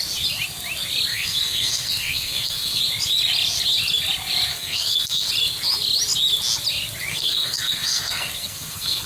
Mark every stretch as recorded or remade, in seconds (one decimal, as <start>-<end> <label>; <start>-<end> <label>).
0.0-1.1 recorded; 1.1-2.8 remade; 2.8-4.5 recorded; 4.5-5.3 remade; 5.3-7.1 recorded; 7.1-9.1 remade

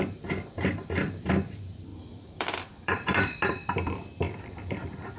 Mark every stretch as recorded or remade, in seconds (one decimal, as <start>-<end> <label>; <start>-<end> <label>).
0.0-1.9 recorded; 1.9-5.2 remade